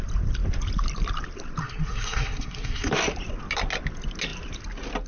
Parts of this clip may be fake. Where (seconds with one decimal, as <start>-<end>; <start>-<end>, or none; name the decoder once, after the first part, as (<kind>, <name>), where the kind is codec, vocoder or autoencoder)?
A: 1.6-2.9 (codec, SNAC)